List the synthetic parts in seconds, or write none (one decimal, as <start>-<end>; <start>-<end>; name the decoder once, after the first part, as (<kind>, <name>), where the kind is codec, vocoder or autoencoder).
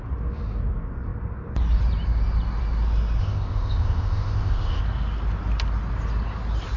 3.2-4.8 (codec, ZipCodec)